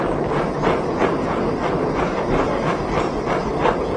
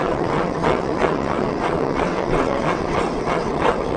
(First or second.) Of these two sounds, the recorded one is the first